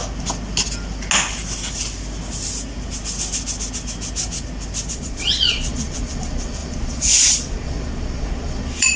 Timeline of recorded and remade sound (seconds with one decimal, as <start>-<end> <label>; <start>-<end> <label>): 0.0-4.9 recorded; 4.9-9.0 remade